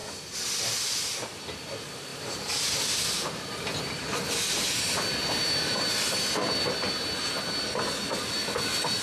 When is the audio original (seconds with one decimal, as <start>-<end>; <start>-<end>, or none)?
0.0-2.1; 5.9-9.0